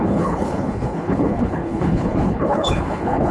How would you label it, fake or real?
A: fake